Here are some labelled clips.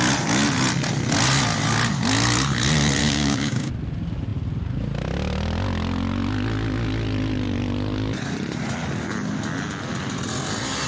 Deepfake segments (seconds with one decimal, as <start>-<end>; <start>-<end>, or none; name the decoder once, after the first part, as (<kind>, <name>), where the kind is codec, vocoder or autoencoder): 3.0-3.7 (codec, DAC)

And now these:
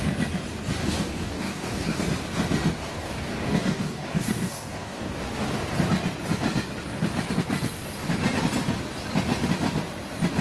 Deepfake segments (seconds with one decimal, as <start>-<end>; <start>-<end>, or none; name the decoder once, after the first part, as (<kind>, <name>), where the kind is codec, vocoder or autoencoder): 0.8-2.0 (codec, DAC); 2.9-5.3

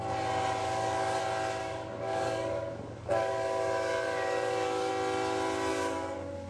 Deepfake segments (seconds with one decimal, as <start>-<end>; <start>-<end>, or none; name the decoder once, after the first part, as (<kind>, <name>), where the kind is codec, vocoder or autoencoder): 0.6-1.2 (codec, DAC); 1.6-4.9; 5.7-6.5

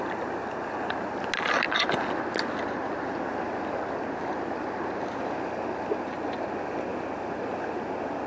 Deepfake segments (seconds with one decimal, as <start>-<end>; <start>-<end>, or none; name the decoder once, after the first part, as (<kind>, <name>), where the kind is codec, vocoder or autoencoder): none

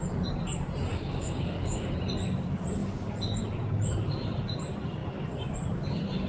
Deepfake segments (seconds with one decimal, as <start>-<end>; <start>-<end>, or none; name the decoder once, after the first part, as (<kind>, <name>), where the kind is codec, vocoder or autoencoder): 0.9-1.9 (codec, DAC)